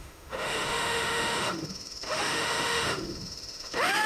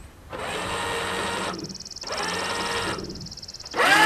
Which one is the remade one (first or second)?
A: first